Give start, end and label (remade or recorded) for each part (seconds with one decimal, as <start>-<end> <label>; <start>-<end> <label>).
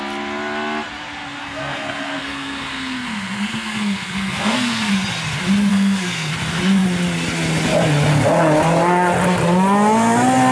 0.0-1.4 recorded; 1.4-4.9 remade; 4.9-5.7 recorded; 5.7-6.3 remade; 6.3-10.5 recorded